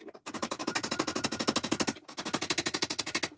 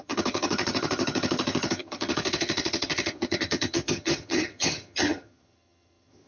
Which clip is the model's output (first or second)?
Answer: second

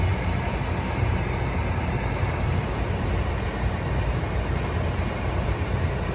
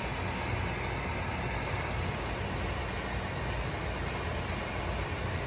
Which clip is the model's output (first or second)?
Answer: first